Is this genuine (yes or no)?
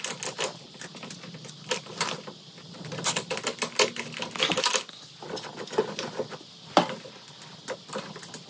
yes